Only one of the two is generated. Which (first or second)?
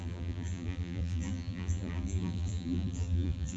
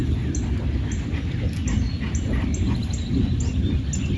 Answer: first